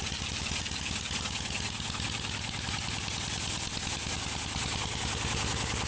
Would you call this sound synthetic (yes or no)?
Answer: no